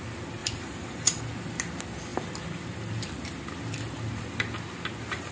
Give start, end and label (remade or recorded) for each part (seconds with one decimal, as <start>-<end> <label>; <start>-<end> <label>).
0.0-0.4 recorded; 0.4-1.2 remade; 1.2-5.3 recorded